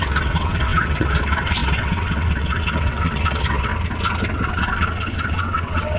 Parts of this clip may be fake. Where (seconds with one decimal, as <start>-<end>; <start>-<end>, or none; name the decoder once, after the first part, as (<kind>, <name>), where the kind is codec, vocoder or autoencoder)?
0.0-3.7 (vocoder, WaveNeXt); 5.1-6.0